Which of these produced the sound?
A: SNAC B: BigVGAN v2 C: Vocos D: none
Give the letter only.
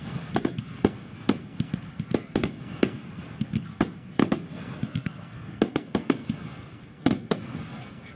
A